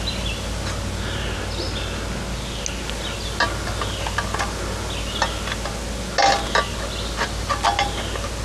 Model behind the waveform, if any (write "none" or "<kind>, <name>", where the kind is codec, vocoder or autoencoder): none